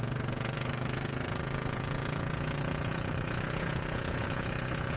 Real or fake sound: fake